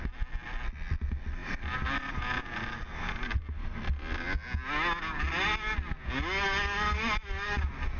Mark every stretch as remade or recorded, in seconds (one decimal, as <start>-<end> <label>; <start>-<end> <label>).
0.0-1.4 recorded; 1.4-2.4 remade; 2.4-8.0 recorded